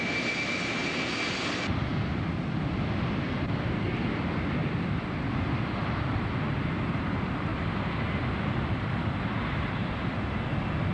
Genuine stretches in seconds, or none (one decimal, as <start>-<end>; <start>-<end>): 0.8-1.4; 1.9-2.5; 7.5-8.3